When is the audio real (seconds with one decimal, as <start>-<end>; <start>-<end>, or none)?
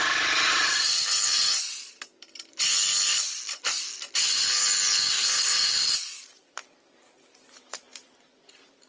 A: 1.4-5.1